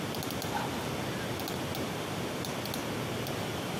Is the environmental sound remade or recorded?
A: recorded